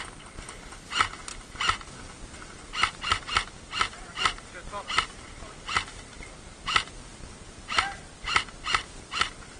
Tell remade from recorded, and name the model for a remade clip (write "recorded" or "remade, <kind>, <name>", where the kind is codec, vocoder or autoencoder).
recorded